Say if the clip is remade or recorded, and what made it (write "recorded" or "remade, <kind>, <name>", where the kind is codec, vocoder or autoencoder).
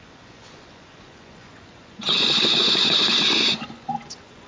remade, vocoder, Vocos